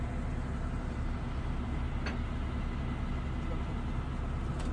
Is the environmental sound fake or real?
real